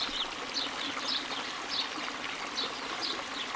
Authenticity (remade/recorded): recorded